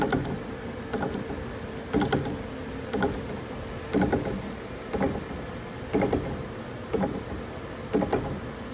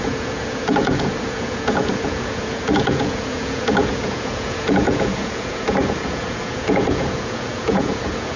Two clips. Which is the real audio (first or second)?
first